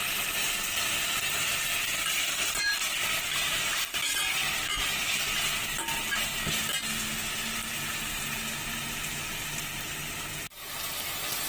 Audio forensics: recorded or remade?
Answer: recorded